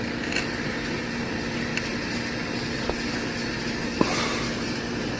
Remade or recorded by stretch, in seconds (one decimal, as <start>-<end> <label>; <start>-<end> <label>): 0.0-5.2 recorded